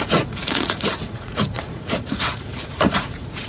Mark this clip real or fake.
fake